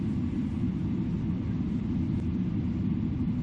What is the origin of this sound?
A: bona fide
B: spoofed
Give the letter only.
A